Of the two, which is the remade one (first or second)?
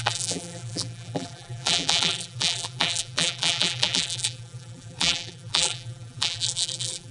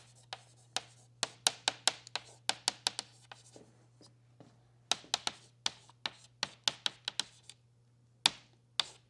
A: first